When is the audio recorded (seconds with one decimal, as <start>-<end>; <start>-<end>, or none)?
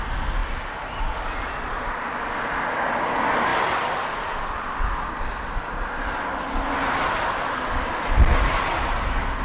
0.0-9.4